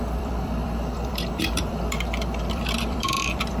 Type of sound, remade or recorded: remade